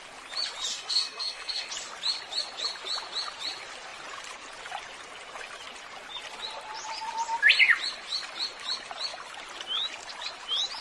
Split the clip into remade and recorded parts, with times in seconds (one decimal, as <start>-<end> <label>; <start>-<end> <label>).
0.0-0.7 recorded; 0.7-1.7 remade; 1.7-10.8 recorded